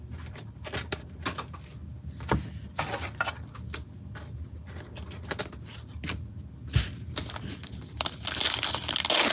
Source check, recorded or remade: recorded